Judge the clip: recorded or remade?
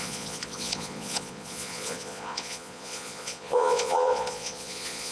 remade